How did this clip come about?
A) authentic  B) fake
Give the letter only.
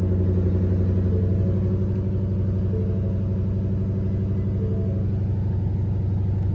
A